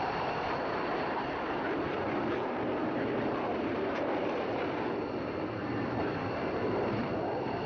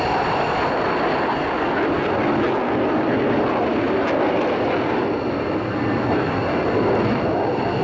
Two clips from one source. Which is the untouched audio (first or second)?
second